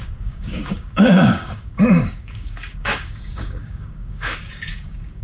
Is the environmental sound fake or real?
fake